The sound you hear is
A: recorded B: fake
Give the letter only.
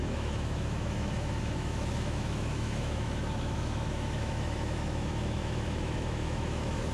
B